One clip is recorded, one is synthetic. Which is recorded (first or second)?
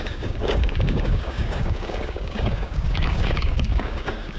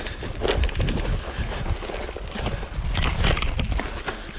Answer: second